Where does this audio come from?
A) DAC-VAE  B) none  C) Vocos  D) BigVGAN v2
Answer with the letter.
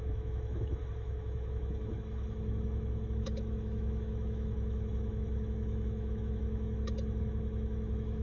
A